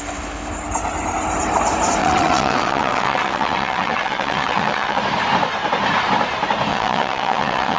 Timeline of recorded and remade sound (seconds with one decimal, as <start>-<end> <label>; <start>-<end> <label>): 0.0-2.0 recorded; 2.0-5.0 remade; 5.0-6.7 recorded; 6.7-7.8 remade